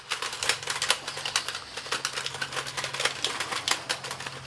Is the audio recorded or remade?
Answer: recorded